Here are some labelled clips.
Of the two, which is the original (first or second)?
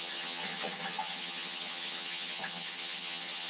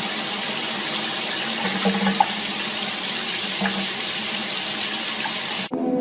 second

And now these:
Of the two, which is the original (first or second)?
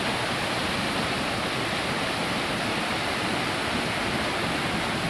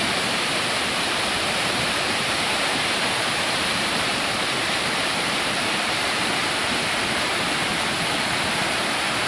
first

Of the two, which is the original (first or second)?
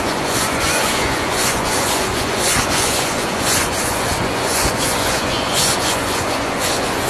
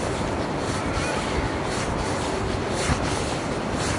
second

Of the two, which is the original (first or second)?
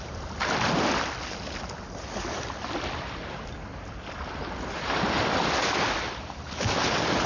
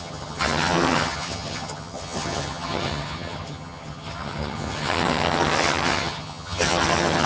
first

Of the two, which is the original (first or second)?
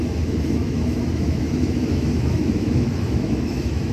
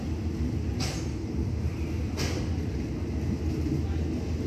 second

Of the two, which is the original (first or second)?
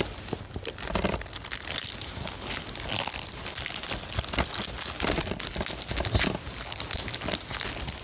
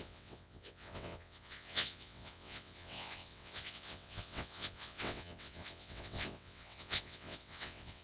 first